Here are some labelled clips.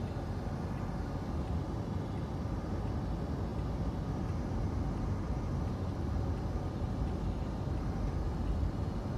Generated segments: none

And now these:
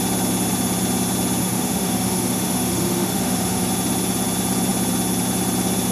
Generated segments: 1.4-3.7 (autoencoder, DAC-VAE)

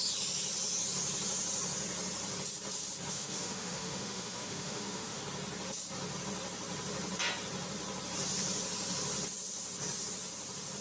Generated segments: 3.1-5.2 (autoencoder, DAC-VAE)

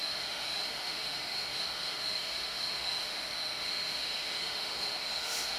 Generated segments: 0.0-5.6 (autoencoder, DAC-VAE)

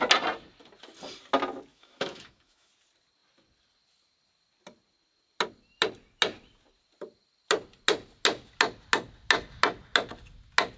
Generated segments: 1.7-2.7 (autoencoder, DAC-VAE)